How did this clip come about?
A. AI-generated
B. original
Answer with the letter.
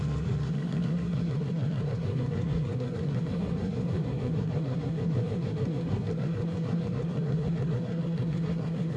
A